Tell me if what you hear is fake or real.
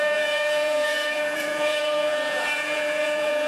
fake